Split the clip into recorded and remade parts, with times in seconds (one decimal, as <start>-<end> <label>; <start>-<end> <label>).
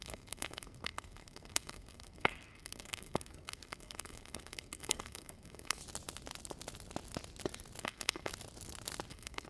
0.0-5.8 remade; 5.8-7.8 recorded; 7.8-8.3 remade; 8.3-9.1 recorded; 9.1-9.5 remade